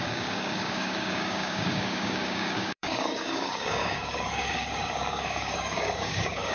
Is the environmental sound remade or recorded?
remade